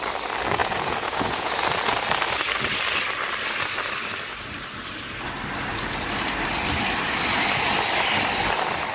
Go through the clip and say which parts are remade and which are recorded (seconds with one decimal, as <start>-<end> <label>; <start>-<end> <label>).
0.0-0.6 recorded; 0.6-1.5 remade; 1.5-8.9 recorded